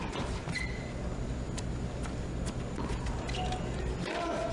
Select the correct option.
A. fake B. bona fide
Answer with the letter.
B